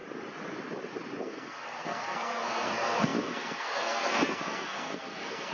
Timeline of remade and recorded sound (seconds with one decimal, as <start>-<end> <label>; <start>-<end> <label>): 0.0-1.2 recorded; 1.2-5.5 remade